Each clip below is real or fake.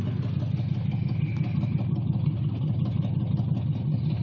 real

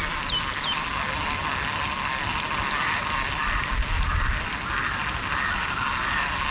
real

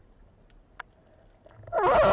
real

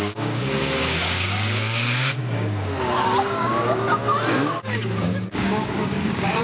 fake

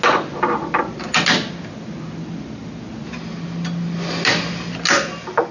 real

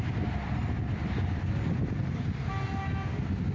real